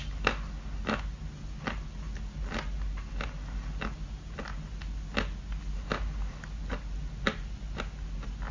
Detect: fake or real real